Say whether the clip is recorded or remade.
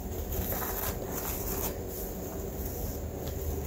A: recorded